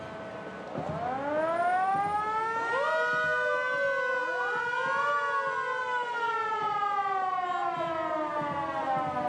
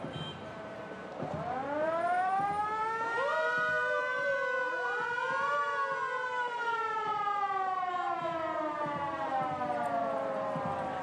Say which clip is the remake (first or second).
second